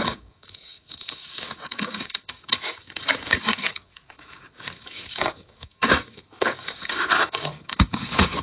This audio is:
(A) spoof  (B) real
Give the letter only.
A